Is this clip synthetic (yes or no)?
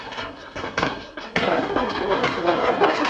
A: yes